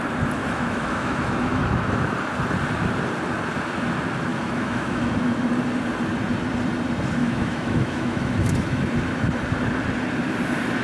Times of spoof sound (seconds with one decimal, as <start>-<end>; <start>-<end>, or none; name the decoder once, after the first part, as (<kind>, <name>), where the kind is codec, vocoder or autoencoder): 0.4-1.6 (autoencoder, DAC-VAE); 4.3-5.4; 7.2-8.8